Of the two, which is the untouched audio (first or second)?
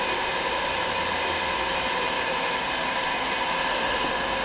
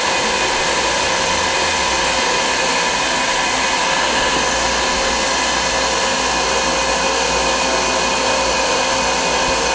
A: second